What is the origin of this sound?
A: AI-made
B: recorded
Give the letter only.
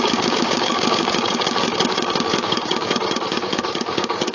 A